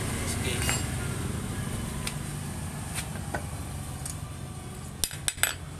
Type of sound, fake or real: real